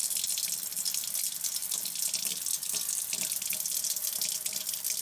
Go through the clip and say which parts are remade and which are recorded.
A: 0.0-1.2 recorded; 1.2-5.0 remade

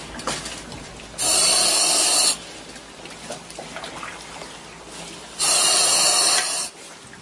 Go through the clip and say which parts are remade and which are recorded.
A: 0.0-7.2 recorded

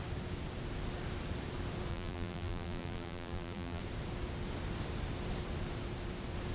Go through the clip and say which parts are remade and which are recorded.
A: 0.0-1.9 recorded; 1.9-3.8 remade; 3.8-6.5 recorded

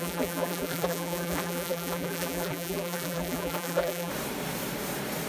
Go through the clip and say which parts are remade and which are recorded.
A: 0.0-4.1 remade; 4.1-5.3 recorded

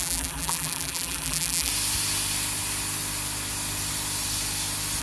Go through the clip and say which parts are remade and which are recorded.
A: 0.0-1.7 remade; 1.7-5.0 recorded

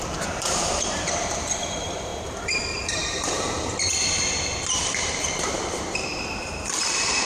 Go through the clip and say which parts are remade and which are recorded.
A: 0.0-7.2 remade

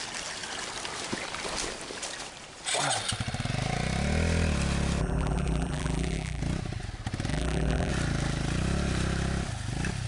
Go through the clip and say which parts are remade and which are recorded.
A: 0.0-5.0 recorded; 5.0-6.4 remade; 6.4-7.3 recorded; 7.3-7.9 remade; 7.9-10.1 recorded

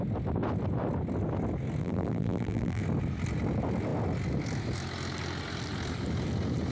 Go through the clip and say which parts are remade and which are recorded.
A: 0.0-1.8 recorded; 1.8-2.8 remade; 2.8-6.7 recorded